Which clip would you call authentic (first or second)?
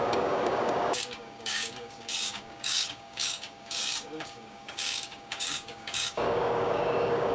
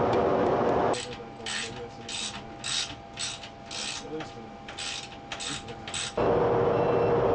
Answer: second